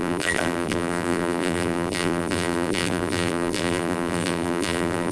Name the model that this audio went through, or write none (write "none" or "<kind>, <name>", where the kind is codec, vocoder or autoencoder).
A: vocoder, BigVGAN v2